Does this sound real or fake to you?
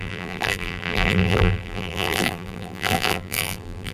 fake